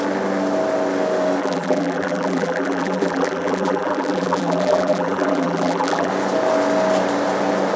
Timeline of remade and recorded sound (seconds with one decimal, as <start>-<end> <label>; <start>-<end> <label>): 0.0-1.4 recorded; 1.4-6.1 remade; 6.1-7.8 recorded